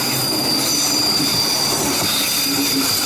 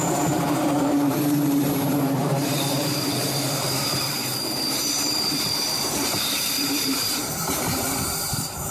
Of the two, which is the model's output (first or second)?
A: second